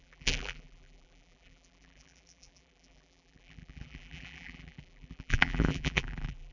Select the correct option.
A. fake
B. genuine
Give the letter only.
A